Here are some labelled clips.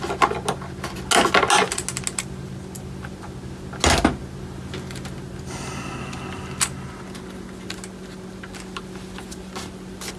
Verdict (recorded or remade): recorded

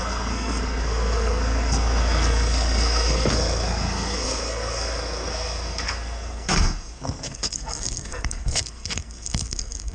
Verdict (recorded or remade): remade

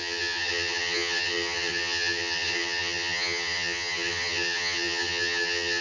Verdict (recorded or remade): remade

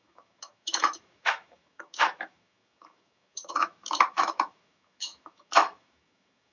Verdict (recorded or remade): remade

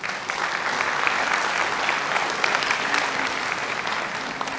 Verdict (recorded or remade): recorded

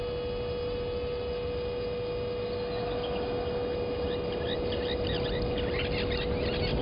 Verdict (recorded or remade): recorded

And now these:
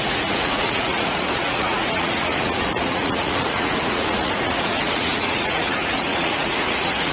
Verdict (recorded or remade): remade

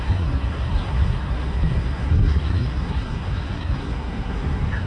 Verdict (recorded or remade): remade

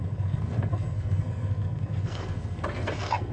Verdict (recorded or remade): remade